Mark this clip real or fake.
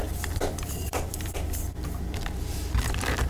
fake